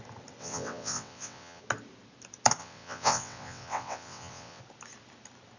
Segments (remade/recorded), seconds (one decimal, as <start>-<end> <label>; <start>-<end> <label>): 0.0-0.4 recorded; 0.4-1.6 remade; 1.6-2.6 recorded; 2.6-4.6 remade; 4.6-5.6 recorded